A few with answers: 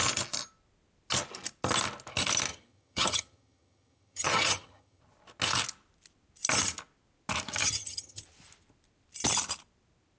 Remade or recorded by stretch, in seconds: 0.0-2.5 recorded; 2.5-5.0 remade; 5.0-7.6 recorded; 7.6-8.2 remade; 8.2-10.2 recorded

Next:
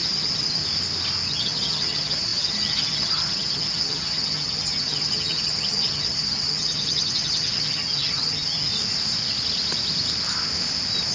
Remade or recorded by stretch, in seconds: 0.0-0.6 remade; 0.6-1.3 recorded; 1.3-8.7 remade; 8.7-11.1 recorded